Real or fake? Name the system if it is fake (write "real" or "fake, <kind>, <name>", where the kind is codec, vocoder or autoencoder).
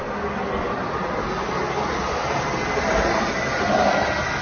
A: real